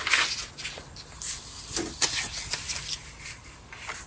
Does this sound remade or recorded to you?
recorded